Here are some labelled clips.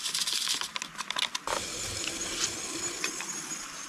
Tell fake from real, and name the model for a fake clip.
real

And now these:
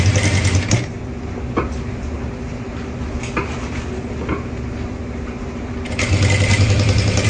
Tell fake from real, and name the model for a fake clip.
real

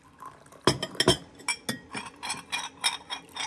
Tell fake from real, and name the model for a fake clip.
real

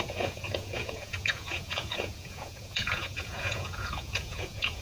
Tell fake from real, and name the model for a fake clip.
fake, vocoder, Vocos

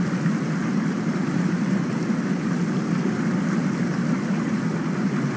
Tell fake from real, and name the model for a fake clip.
real